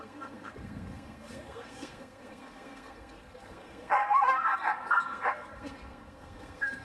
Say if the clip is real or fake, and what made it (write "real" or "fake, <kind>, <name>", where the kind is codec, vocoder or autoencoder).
fake, codec, SNAC